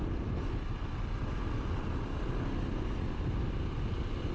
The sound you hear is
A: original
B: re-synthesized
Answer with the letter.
A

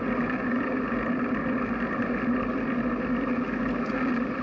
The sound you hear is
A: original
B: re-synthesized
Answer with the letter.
A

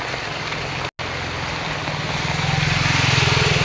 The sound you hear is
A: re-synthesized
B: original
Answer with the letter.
B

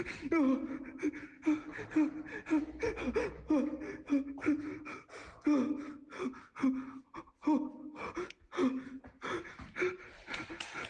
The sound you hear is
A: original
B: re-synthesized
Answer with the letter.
A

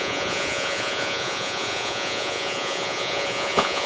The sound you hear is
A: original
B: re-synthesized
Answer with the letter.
B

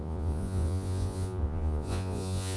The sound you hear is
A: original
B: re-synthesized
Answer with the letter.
B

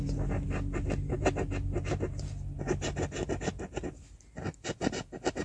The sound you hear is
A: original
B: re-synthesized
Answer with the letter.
A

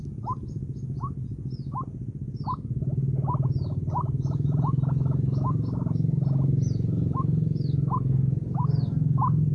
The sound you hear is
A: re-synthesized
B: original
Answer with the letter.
B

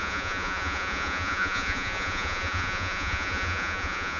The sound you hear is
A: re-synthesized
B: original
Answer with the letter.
A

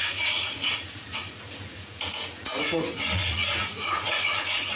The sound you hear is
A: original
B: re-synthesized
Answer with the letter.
B